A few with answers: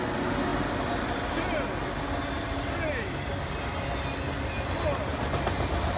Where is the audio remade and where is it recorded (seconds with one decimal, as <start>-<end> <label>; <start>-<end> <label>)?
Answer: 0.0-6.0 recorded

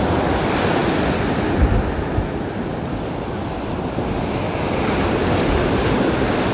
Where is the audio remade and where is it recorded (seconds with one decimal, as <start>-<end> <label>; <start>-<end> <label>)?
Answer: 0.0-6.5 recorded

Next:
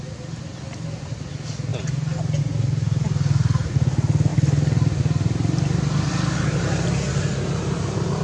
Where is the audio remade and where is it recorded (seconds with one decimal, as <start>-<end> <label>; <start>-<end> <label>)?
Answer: 0.0-8.2 recorded

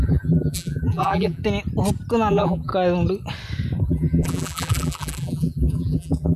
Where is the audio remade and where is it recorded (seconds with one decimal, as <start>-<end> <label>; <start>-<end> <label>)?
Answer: 0.0-1.4 remade; 1.4-2.3 recorded; 2.3-2.7 remade; 2.7-3.8 recorded; 3.8-6.4 remade

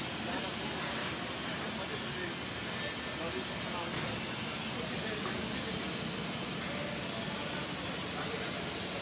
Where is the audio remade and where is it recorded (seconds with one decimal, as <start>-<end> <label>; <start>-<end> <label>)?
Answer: 0.0-9.0 recorded

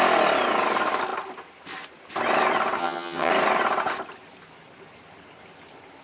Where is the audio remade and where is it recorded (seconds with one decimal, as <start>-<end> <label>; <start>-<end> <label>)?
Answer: 0.0-2.8 recorded; 2.8-3.3 remade; 3.3-6.0 recorded

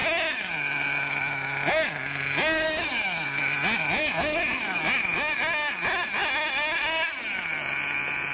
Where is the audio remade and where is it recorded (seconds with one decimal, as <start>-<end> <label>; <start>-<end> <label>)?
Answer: 0.0-8.3 recorded